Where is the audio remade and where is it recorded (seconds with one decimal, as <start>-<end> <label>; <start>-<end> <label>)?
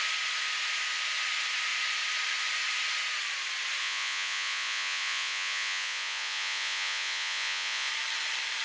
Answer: 0.0-3.8 recorded; 3.8-7.9 remade; 7.9-8.6 recorded